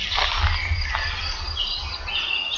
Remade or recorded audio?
recorded